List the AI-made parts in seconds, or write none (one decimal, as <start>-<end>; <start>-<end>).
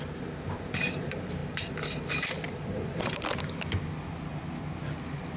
1.4-4.6